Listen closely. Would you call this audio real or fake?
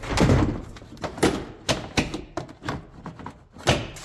real